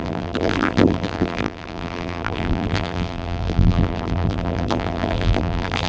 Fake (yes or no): yes